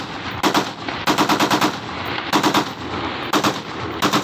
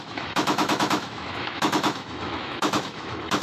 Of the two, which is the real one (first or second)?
first